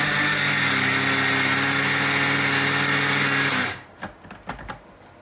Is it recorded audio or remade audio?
recorded